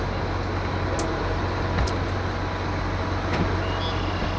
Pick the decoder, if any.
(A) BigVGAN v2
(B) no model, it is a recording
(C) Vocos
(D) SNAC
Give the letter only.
B